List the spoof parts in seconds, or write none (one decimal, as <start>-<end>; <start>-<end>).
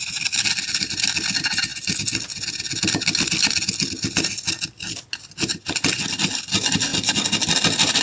none